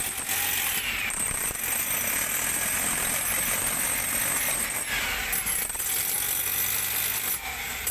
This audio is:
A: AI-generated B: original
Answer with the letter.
B